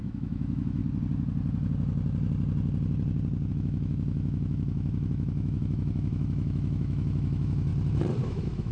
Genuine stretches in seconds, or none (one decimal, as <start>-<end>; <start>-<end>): 0.8-3.5; 7.7-8.2